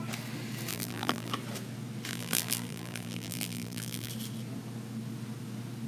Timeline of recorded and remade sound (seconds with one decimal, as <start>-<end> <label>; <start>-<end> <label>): 0.0-0.7 recorded; 0.7-1.3 remade; 1.3-2.1 recorded; 2.1-4.1 remade; 4.1-5.9 recorded